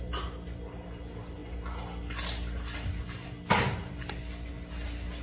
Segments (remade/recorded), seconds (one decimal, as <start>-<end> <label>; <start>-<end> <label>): 0.0-5.2 recorded